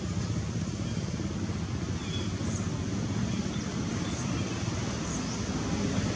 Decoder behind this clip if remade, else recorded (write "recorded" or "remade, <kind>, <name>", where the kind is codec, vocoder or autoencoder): recorded